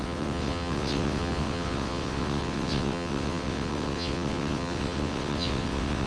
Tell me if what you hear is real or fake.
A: fake